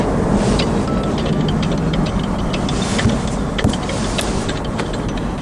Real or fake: real